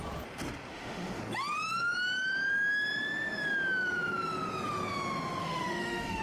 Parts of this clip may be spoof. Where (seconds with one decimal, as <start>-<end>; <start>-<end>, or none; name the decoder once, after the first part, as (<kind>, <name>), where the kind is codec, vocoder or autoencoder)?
0.7-1.2 (autoencoder, DAC-VAE); 5.4-6.2